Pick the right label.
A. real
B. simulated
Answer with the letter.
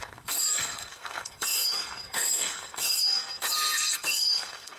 B